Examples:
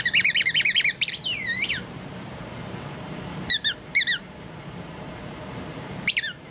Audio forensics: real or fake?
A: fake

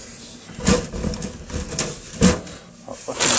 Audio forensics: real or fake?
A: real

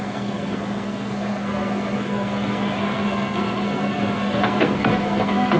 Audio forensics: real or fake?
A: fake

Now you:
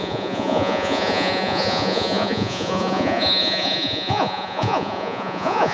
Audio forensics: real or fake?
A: fake